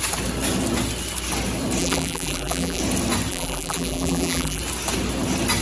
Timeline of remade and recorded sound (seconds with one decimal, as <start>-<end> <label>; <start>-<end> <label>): 0.0-1.8 recorded; 1.8-2.8 remade; 2.8-3.3 recorded; 3.3-4.6 remade; 4.6-5.6 recorded